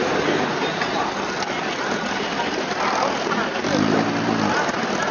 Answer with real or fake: real